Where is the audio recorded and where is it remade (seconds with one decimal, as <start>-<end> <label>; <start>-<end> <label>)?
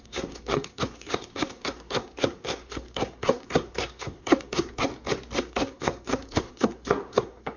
0.0-4.9 remade; 4.9-5.4 recorded; 5.4-7.6 remade